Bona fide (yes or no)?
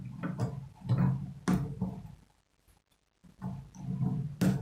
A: yes